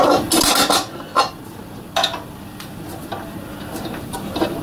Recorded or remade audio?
recorded